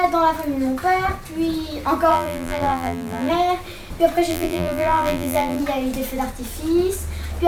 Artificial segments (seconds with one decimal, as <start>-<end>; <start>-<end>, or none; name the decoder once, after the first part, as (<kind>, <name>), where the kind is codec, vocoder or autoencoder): 2.1-3.3 (vocoder, BigVGAN v2); 4.3-5.6